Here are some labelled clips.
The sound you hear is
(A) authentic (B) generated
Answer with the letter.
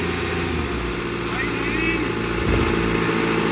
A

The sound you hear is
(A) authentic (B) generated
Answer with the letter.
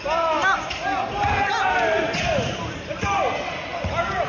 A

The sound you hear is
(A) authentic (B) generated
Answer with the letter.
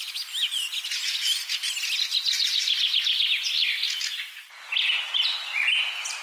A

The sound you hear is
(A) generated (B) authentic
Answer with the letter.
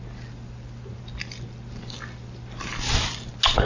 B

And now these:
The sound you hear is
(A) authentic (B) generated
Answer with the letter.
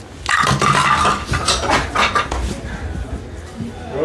A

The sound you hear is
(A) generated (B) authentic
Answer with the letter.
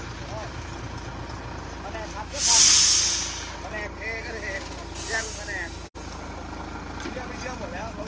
B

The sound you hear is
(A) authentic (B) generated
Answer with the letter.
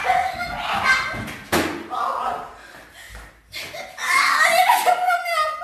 A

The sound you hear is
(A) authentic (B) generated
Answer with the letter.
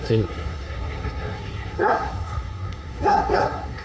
B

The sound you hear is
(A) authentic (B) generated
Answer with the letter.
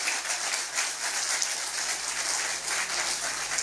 B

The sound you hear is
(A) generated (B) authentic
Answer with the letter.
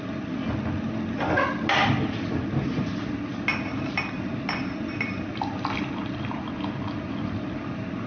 B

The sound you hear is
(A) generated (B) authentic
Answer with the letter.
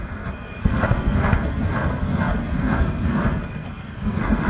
A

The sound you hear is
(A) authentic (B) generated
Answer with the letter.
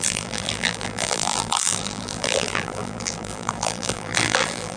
B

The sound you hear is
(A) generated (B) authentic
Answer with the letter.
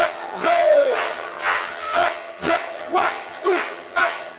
A